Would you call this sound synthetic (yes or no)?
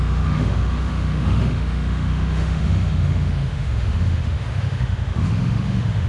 yes